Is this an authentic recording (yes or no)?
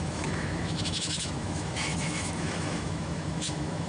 no